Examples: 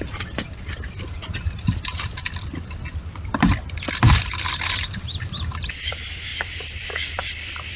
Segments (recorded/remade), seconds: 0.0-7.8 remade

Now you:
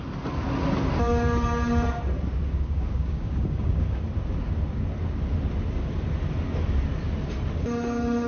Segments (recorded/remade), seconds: 0.0-2.5 recorded; 2.5-4.0 remade; 4.0-8.3 recorded